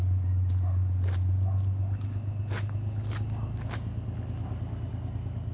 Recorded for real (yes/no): yes